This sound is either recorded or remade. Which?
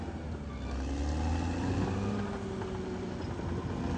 recorded